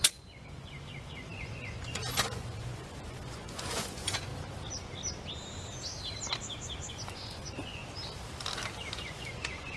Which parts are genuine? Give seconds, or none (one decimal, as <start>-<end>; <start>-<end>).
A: 4.3-6.9; 7.8-8.9